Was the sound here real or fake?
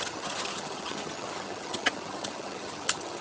fake